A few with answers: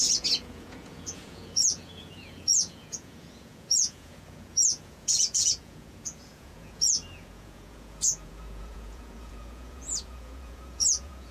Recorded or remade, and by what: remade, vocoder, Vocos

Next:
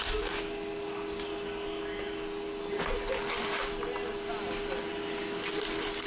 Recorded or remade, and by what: recorded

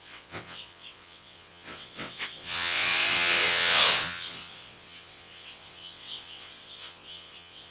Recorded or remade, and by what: remade, vocoder, WaveNeXt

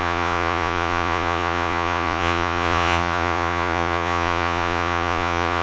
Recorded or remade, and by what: remade, vocoder, Vocos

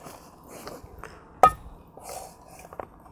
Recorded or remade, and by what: recorded